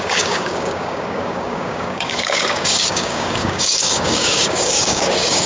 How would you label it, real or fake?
fake